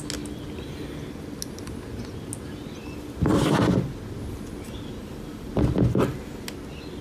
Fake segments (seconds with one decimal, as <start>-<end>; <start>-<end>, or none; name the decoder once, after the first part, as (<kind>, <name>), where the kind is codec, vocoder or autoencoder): 5.0-5.5 (vocoder, BigVGAN v2)